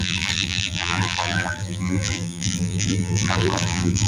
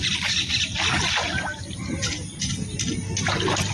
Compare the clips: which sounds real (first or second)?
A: second